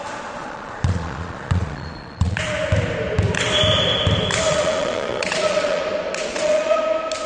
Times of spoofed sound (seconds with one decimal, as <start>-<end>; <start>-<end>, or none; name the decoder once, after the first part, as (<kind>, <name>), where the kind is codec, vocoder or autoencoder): 0.4-2.4 (vocoder, Vocos); 4.5-5.8; 6.3-6.8